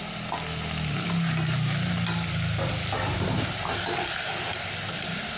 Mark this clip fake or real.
real